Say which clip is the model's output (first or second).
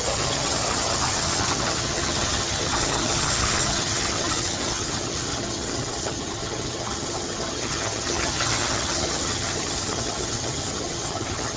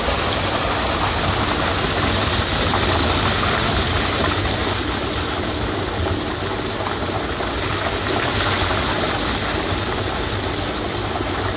first